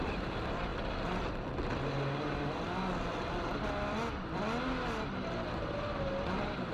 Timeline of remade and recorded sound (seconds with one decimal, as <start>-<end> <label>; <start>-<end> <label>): 0.0-6.7 recorded